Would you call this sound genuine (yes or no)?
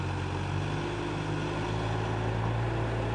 yes